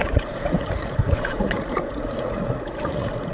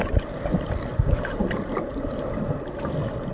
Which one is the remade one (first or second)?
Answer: first